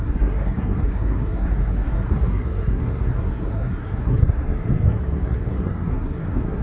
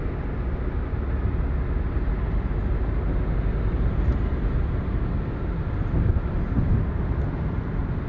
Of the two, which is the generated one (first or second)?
first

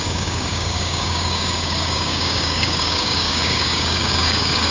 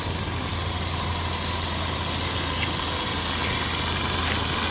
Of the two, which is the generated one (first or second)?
first